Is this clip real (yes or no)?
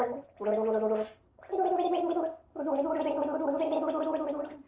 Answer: yes